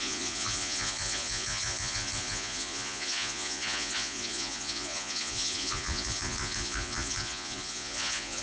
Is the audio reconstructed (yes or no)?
yes